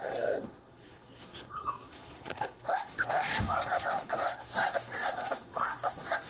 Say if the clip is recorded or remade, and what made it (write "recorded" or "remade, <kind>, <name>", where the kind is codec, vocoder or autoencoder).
remade, codec, SNAC